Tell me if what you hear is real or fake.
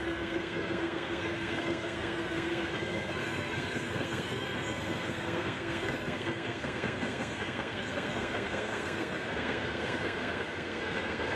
fake